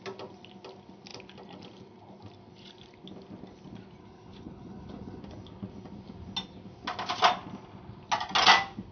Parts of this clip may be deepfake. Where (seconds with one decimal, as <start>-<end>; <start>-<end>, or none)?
4.0-5.2